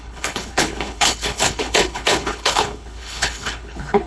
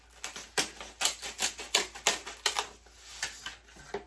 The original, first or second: second